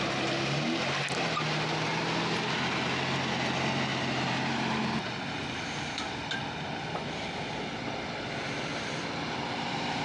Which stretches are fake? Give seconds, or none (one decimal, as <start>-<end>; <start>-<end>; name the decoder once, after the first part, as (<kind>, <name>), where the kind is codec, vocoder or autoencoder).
3.9-4.8 (vocoder, BigVGAN v2)